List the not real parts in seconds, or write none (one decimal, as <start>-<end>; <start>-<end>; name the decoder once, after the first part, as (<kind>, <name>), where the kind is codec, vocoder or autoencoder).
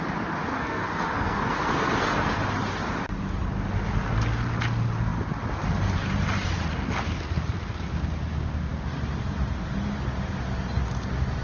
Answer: 0.5-2.4 (codec, SNAC)